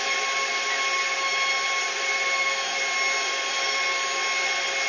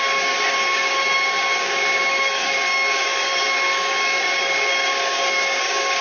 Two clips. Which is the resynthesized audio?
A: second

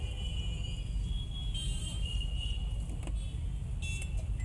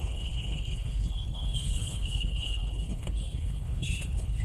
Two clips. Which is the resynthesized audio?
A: second